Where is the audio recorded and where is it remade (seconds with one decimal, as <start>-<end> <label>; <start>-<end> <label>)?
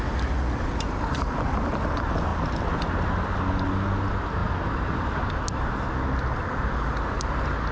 0.0-4.4 recorded; 4.4-5.2 remade; 5.2-7.7 recorded